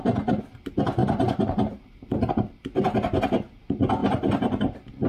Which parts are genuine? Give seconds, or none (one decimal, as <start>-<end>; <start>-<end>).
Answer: 0.0-1.0; 2.5-4.0